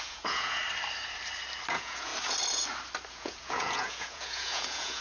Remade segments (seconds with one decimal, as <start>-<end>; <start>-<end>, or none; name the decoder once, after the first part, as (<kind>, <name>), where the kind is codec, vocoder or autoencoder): 0.0-0.6 (vocoder, Vocos); 1.7-2.1; 3.1-5.0